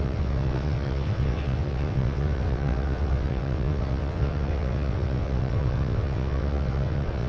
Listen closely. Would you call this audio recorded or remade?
remade